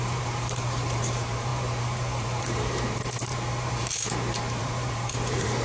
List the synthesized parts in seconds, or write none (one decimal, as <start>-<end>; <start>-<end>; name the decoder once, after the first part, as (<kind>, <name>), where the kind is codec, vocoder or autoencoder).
0.0-5.6 (vocoder, BigVGAN v2)